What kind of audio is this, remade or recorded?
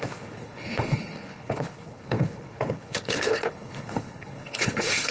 remade